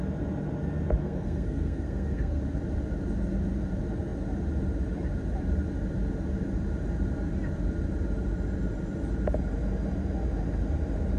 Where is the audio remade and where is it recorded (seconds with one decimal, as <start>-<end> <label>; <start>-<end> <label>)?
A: 0.0-1.0 recorded; 1.0-2.4 remade; 2.4-11.2 recorded